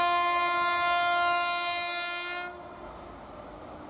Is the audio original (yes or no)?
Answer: yes